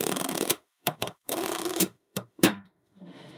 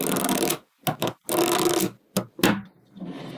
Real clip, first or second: second